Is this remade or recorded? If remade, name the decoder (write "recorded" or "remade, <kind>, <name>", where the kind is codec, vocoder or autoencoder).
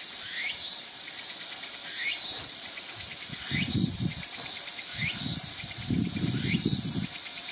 recorded